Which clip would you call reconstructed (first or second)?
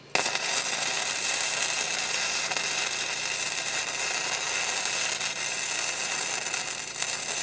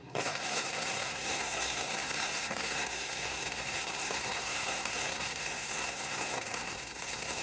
second